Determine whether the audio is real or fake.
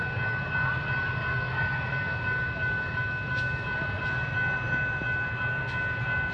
real